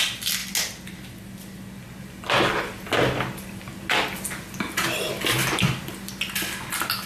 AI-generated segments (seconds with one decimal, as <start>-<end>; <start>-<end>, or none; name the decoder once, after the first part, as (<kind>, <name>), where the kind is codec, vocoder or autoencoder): none